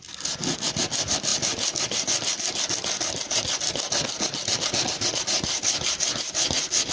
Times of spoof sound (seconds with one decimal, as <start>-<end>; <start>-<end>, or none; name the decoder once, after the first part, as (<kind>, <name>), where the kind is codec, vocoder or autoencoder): none